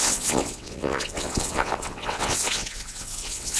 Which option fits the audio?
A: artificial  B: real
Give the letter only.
A